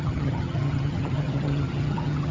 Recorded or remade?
remade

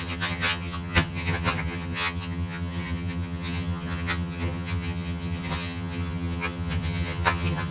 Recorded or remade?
remade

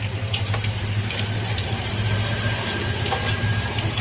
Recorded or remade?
recorded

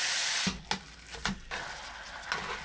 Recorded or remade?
recorded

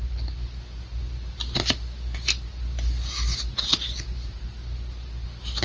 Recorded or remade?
recorded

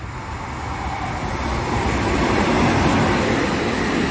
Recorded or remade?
recorded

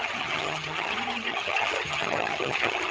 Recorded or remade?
remade